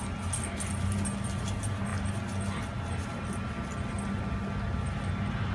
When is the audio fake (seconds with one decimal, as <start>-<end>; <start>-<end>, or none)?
none